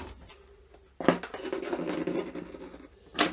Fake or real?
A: real